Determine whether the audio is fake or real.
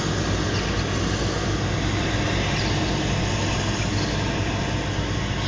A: real